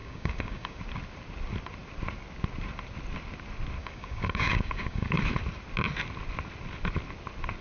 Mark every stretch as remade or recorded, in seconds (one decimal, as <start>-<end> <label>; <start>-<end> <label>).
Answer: 0.0-0.8 remade; 0.8-3.8 recorded; 3.8-5.2 remade; 5.2-7.6 recorded